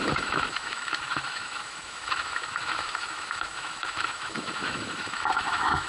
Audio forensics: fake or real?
fake